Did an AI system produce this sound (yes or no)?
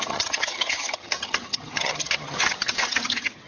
yes